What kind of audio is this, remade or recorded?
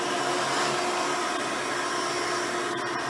recorded